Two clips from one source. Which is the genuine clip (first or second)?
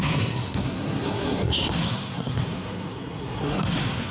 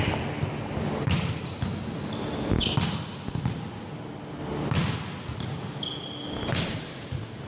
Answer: second